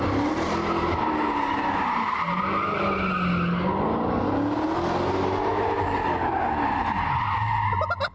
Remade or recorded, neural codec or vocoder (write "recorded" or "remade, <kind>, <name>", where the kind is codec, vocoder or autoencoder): recorded